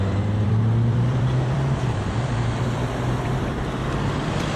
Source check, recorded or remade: remade